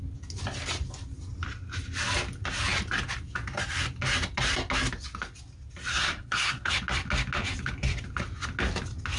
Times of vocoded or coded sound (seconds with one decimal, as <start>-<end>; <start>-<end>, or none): 5.9-6.7